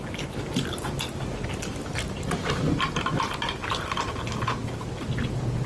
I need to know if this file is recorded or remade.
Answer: recorded